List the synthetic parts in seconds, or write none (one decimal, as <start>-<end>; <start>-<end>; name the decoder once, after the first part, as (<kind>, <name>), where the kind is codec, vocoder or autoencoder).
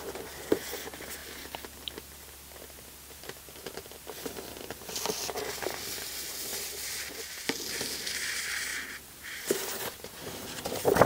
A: none